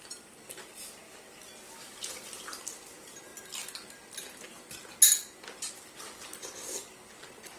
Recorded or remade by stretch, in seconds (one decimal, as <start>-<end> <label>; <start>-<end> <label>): 0.0-7.6 recorded